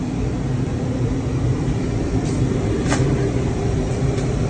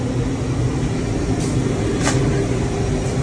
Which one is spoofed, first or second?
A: first